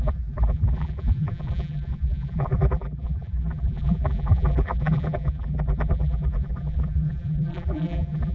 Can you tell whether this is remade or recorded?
remade